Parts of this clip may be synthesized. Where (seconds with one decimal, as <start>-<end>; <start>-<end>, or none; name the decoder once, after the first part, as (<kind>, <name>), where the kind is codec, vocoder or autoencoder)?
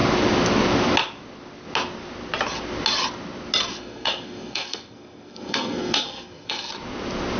3.7-6.7 (codec, SNAC)